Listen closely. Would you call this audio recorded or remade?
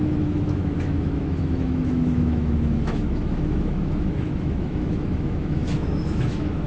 remade